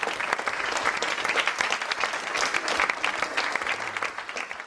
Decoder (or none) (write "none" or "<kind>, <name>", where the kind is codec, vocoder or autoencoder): none